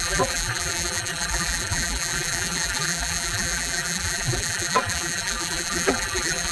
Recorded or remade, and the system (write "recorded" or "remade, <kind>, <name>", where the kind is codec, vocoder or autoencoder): remade, vocoder, BigVGAN v2